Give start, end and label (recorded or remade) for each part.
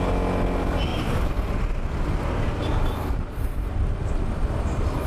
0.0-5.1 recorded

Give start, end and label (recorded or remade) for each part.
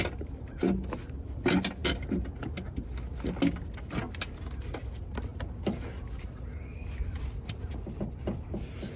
0.0-9.0 recorded